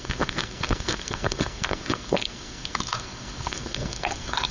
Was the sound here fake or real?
fake